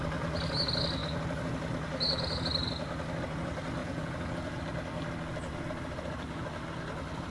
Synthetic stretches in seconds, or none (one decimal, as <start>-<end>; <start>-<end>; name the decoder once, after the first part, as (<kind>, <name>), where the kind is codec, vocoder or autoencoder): 3.8-4.6 (vocoder, Vocos)